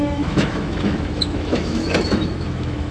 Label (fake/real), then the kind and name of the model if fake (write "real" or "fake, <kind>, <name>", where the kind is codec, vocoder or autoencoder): fake, autoencoder, DAC-VAE